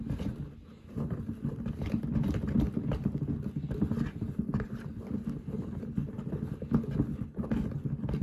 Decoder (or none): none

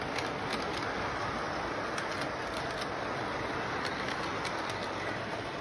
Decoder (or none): none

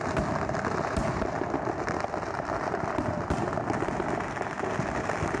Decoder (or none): none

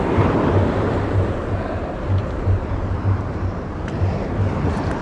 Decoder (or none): vocoder, BigVGAN v2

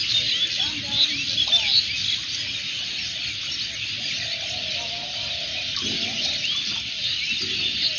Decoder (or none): none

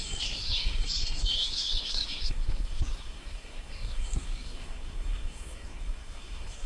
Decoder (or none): codec, SNAC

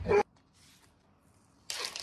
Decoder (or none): none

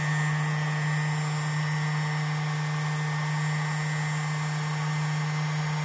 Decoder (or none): none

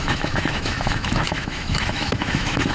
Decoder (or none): autoencoder, DAC-VAE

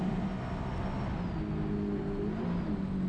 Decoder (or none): none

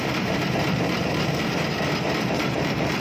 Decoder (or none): vocoder, BigVGAN v2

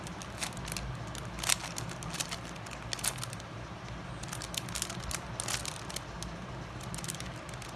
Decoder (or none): none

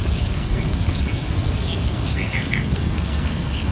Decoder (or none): codec, SNAC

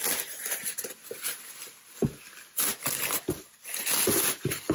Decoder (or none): none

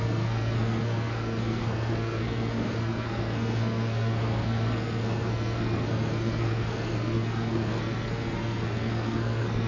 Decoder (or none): codec, SNAC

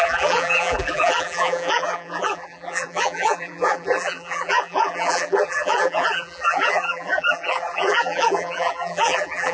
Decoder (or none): vocoder, BigVGAN v2